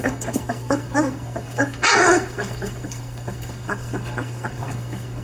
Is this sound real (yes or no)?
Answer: no